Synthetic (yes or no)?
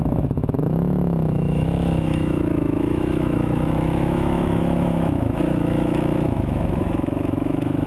yes